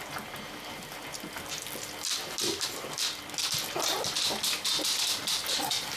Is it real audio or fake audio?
real